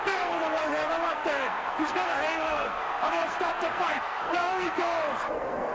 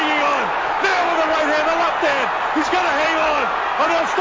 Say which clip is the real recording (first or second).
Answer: second